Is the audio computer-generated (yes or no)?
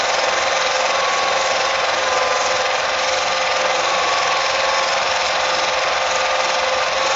no